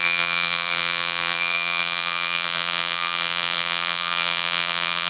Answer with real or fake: fake